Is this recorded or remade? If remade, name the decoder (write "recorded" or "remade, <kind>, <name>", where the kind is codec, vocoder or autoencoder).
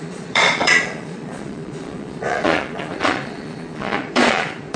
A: remade, vocoder, Vocos